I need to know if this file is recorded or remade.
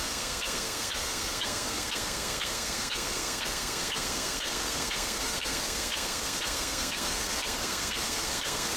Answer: remade